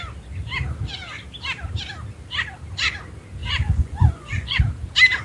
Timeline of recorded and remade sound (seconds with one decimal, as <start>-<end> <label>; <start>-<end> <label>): 0.0-3.4 recorded; 3.4-4.6 remade; 4.6-5.2 recorded